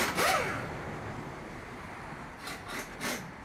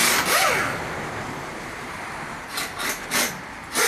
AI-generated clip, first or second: first